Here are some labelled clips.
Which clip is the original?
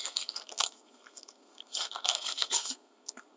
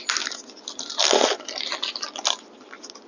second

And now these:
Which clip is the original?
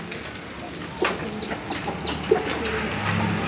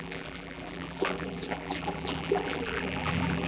first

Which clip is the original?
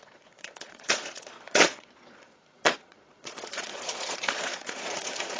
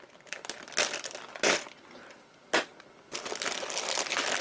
second